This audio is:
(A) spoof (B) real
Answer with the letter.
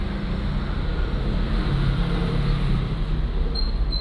B